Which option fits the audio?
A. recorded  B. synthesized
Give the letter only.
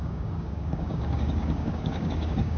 B